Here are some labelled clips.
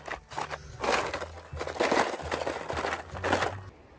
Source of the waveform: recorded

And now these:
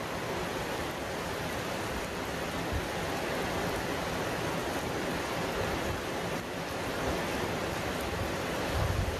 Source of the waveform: recorded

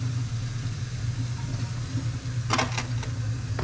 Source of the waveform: recorded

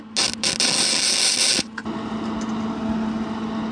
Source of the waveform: recorded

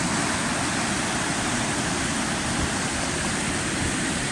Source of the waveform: recorded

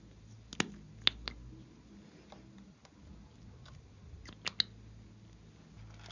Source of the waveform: recorded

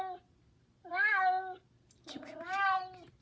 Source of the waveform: recorded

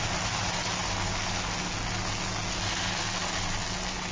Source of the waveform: recorded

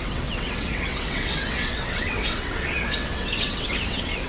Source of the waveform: remade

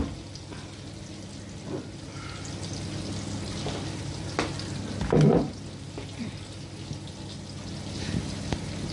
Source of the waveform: recorded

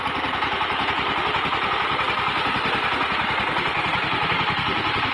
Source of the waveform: recorded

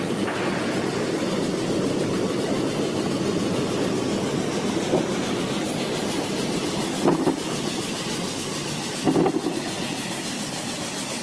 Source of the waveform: recorded